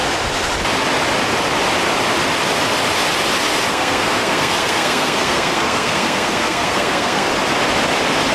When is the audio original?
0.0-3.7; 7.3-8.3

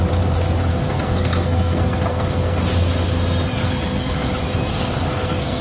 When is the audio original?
0.0-0.7; 2.6-3.6; 4.1-4.7

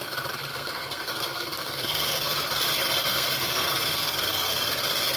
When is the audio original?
0.0-0.5; 2.4-3.0; 4.7-5.2